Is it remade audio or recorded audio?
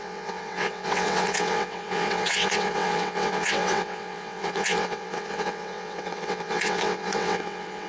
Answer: remade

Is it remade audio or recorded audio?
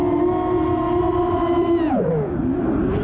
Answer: recorded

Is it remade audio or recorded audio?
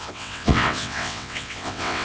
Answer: remade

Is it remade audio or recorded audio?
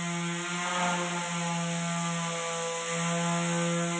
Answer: recorded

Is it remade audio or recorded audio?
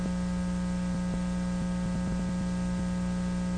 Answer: recorded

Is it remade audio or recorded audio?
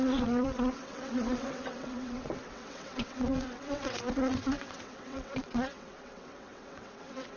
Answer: remade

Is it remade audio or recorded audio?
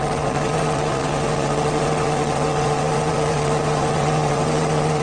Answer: remade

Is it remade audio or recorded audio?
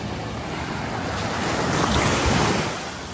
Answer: recorded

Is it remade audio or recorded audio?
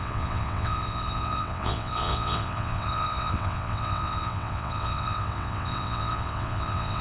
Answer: remade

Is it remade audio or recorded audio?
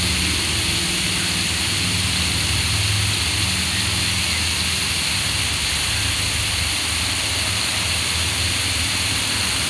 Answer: recorded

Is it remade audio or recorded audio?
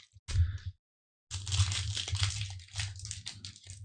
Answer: recorded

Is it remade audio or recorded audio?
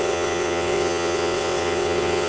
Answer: remade